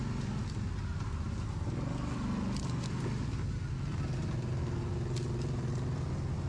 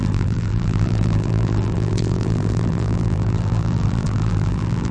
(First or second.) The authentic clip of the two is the first